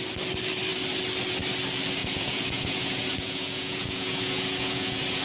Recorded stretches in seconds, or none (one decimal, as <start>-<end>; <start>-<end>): 0.0-2.0